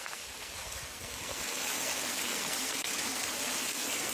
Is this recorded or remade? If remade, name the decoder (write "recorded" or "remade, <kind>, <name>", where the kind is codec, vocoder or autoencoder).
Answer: remade, codec, SNAC